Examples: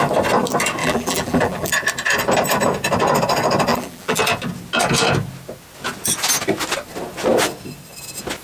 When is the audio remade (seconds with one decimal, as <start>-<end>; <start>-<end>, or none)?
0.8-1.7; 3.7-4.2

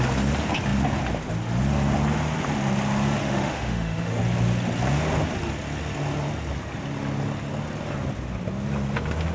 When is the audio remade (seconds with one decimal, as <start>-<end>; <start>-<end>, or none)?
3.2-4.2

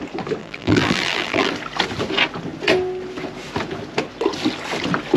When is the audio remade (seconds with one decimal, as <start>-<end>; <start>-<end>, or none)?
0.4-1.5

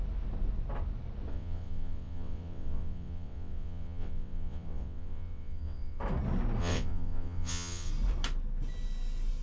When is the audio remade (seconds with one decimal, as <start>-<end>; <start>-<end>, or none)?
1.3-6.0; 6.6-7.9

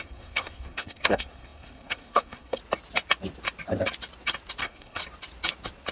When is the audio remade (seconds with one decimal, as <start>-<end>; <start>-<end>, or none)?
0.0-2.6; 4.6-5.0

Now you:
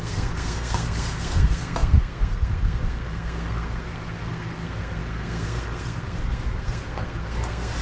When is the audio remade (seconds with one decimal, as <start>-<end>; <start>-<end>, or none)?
0.0-7.8